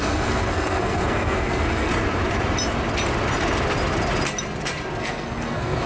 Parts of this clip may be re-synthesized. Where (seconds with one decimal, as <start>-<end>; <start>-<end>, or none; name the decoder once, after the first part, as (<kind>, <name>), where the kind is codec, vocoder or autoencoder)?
0.0-1.9 (codec, SNAC); 5.0-5.9